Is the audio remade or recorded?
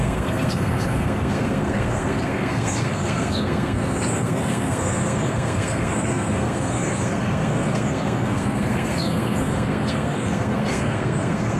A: remade